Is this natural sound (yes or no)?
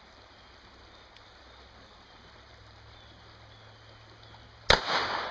yes